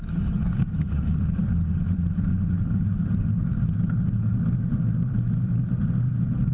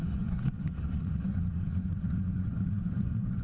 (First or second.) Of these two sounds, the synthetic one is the second